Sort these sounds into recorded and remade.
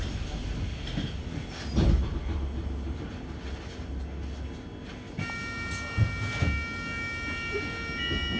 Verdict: recorded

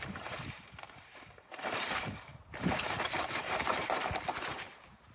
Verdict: remade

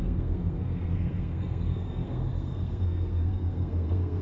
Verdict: remade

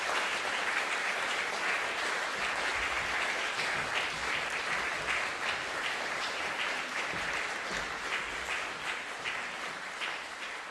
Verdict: recorded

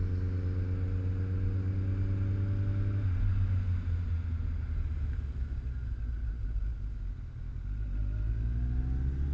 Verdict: recorded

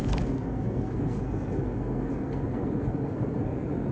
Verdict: remade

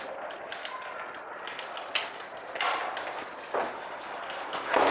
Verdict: recorded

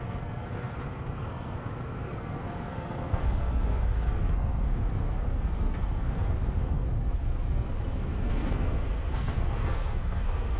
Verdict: remade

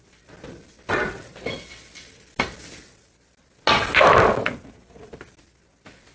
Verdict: recorded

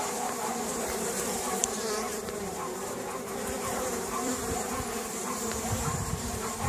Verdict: remade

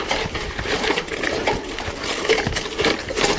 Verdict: recorded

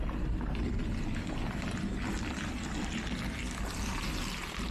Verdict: recorded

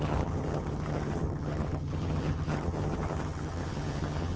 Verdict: remade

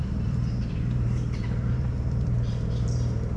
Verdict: remade